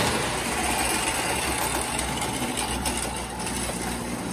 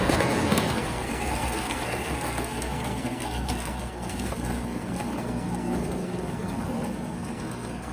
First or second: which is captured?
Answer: first